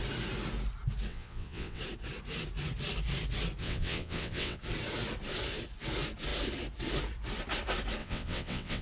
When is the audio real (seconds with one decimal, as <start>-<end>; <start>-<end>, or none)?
0.0-1.1; 1.8-3.6; 4.6-8.0